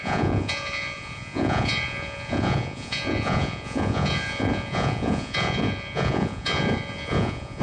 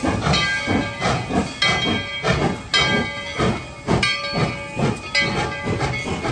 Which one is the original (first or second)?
second